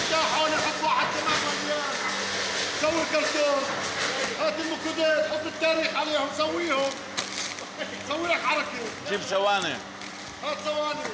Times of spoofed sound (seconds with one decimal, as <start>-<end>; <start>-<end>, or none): none